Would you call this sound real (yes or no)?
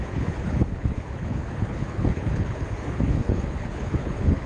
no